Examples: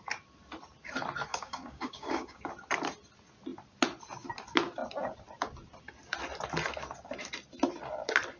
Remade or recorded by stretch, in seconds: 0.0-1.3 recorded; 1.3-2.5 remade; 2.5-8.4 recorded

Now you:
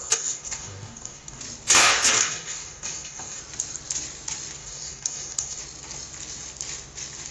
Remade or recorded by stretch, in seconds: 0.0-1.4 remade; 1.4-1.8 recorded; 1.8-3.4 remade; 3.4-4.6 recorded; 4.6-5.6 remade; 5.6-7.3 recorded